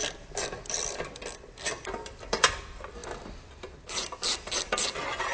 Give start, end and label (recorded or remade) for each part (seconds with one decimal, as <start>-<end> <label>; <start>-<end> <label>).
0.0-3.0 remade; 3.0-3.8 recorded; 3.8-5.3 remade